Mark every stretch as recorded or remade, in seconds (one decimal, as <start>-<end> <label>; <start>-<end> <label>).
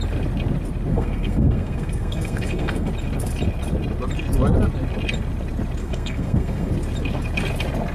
0.0-0.9 recorded; 0.9-2.9 remade; 2.9-5.8 recorded; 5.8-6.7 remade; 6.7-7.9 recorded